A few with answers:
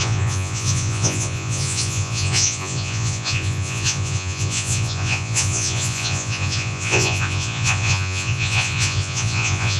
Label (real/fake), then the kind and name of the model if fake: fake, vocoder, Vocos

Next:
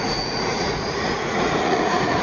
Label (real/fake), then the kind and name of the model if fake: fake, vocoder, Vocos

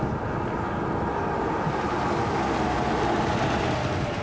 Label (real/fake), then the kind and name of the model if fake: real